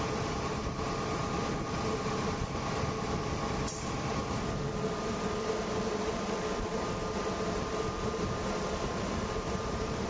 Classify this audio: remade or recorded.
remade